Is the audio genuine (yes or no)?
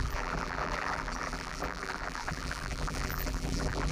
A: no